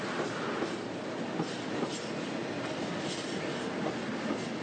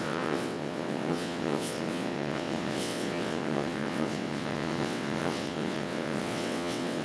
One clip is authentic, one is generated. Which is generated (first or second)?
second